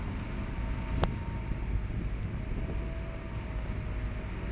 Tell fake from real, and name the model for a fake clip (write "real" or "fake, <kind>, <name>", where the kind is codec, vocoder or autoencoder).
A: real